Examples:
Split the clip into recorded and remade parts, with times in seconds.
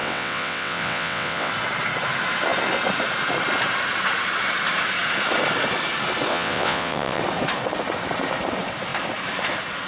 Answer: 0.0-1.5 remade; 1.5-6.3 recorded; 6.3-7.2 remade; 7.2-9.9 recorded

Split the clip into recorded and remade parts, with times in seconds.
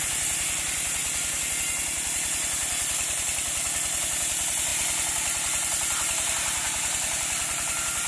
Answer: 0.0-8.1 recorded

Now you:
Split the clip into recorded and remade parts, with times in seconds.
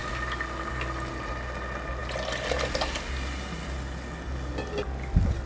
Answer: 0.0-5.5 recorded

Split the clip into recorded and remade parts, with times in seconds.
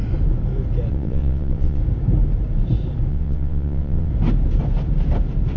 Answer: 0.0-0.9 recorded; 0.9-1.8 remade; 1.8-3.1 recorded; 3.1-4.1 remade; 4.1-5.6 recorded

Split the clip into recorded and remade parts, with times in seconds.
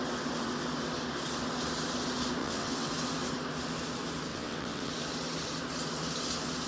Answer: 0.0-2.4 recorded; 2.4-2.9 remade; 2.9-4.3 recorded; 4.3-4.9 remade; 4.9-6.7 recorded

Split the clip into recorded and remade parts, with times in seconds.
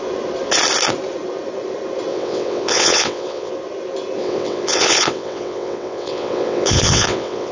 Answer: 0.0-2.1 recorded; 2.1-3.5 remade; 3.5-4.2 recorded; 4.2-7.5 remade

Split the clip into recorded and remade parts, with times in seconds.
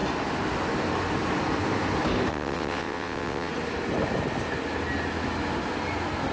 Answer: 0.0-2.3 recorded; 2.3-3.5 remade; 3.5-6.3 recorded